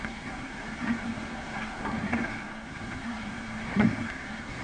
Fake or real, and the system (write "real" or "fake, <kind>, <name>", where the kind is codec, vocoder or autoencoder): fake, codec, SNAC